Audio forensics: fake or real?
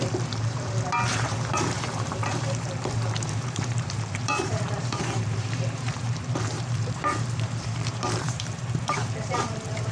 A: fake